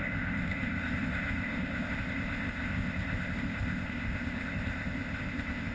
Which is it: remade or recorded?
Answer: remade